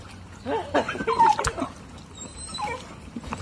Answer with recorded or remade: recorded